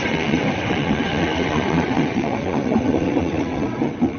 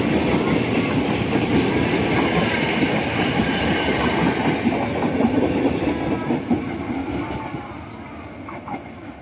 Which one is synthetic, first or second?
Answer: first